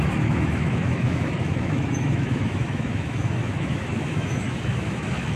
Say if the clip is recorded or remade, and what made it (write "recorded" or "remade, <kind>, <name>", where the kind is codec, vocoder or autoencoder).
remade, autoencoder, DAC-VAE